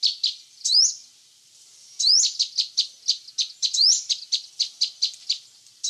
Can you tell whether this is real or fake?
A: real